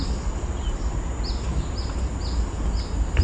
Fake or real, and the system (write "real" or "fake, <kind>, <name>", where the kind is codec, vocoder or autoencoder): real